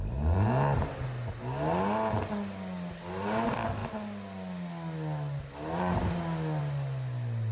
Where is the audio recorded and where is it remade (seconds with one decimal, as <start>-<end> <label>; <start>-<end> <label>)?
0.0-7.5 recorded